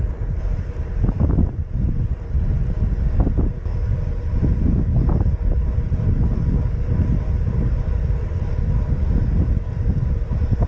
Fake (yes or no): no